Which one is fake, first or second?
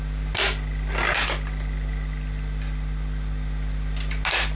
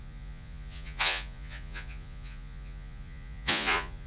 second